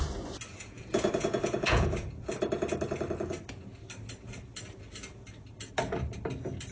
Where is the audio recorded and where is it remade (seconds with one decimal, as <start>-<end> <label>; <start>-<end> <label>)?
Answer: 0.0-0.5 recorded; 0.5-2.1 remade; 2.1-6.7 recorded

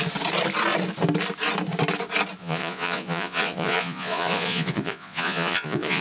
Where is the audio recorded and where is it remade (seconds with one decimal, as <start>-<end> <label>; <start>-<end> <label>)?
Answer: 0.0-2.4 recorded; 2.4-6.0 remade

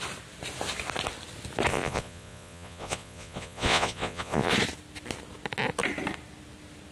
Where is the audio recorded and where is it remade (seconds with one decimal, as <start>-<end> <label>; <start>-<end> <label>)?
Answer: 0.0-1.7 recorded; 1.7-4.5 remade; 4.5-6.9 recorded

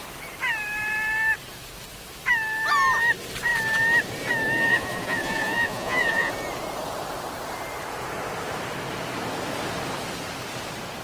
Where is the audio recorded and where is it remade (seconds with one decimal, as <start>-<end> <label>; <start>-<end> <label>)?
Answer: 0.0-4.7 recorded; 4.7-6.3 remade; 6.3-11.0 recorded

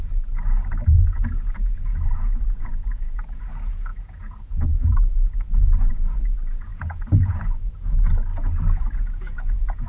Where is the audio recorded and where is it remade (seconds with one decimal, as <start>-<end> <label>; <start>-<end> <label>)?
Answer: 0.0-8.3 remade; 8.3-8.8 recorded; 8.8-9.9 remade